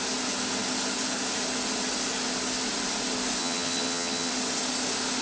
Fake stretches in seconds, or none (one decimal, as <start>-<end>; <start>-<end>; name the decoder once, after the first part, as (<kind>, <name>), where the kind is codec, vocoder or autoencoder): 3.4-4.3 (vocoder, HiFi-GAN)